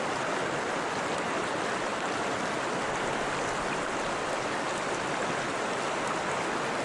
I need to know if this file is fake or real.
real